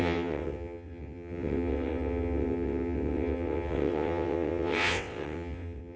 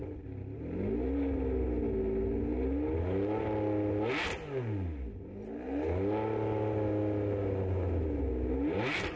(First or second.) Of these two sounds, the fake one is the first